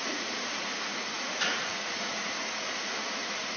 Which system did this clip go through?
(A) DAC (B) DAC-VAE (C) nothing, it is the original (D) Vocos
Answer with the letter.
D